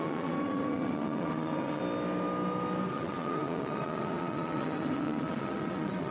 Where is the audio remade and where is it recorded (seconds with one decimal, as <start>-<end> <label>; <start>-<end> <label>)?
0.0-1.8 remade; 1.8-2.9 recorded; 2.9-6.1 remade